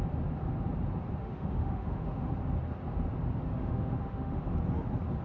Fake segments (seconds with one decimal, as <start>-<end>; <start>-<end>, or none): 1.2-2.3; 3.5-4.4